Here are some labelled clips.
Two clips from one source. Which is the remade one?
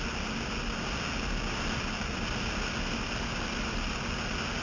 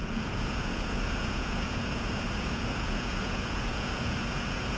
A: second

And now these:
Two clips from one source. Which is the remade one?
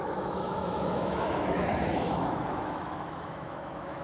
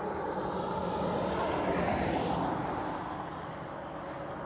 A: first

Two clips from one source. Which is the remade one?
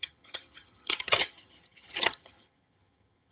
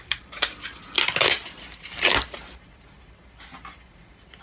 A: first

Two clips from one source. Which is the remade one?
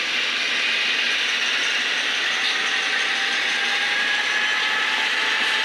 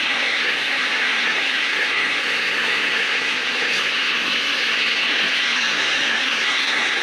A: second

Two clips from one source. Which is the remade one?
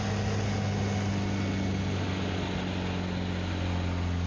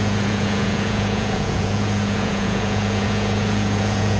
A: second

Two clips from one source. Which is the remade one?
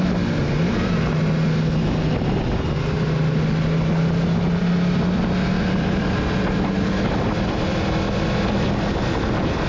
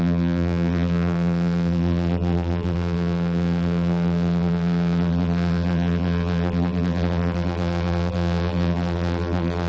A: second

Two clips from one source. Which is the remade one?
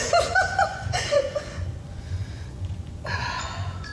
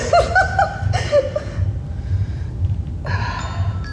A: first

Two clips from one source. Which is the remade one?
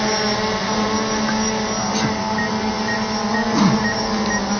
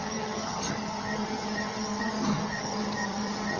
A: second